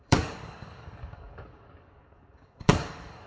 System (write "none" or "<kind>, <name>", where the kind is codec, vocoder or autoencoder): codec, DAC